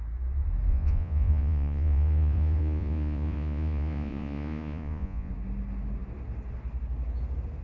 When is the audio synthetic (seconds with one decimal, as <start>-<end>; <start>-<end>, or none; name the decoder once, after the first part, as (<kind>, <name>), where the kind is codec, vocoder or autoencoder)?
0.7-5.3 (vocoder, Vocos)